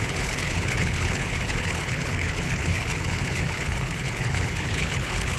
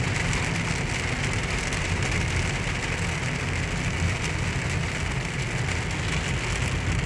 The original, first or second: second